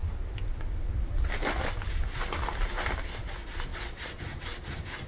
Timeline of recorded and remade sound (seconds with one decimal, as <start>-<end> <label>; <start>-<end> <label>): 0.0-5.1 recorded